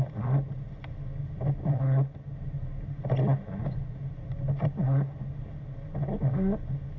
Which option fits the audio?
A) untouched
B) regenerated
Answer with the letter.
A